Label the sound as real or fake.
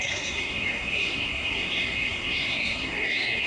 fake